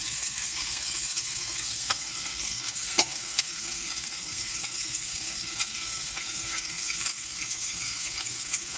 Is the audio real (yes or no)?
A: no